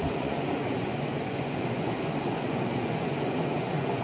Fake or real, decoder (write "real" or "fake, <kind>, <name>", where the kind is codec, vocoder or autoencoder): fake, vocoder, Vocos